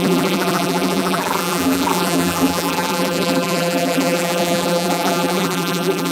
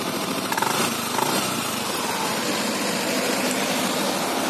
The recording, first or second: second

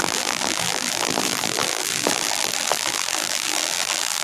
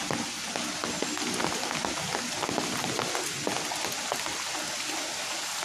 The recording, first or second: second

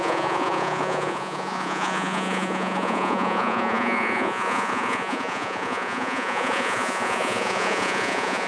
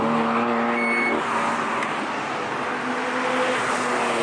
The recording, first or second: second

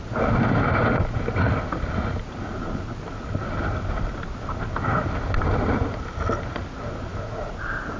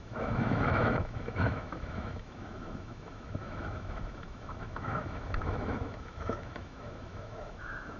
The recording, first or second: first